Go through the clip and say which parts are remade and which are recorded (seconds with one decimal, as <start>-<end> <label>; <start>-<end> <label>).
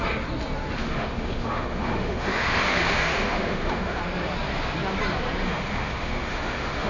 0.0-0.8 recorded; 0.8-4.0 remade; 4.0-5.4 recorded; 5.4-6.9 remade